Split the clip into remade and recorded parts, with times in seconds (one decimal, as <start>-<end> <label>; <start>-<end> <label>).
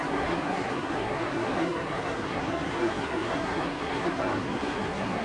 0.0-5.2 remade